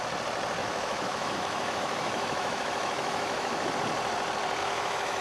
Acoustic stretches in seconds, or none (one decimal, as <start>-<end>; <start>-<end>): 0.0-0.6; 3.7-4.6